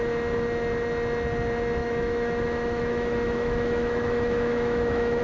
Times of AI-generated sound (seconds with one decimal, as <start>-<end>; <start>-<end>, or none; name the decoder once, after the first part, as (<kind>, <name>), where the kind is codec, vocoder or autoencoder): 1.8-5.2 (autoencoder, DAC-VAE)